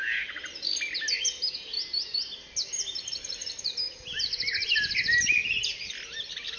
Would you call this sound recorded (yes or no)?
yes